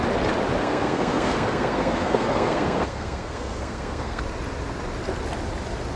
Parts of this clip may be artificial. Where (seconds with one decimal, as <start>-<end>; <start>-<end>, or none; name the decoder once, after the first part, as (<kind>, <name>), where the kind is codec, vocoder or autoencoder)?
0.6-4.2 (codec, SNAC)